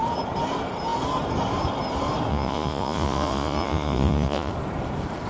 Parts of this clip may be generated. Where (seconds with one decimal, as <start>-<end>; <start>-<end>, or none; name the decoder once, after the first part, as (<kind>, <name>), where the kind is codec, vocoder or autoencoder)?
2.3-4.5 (vocoder, Vocos)